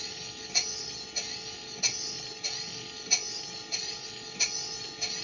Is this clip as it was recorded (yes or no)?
yes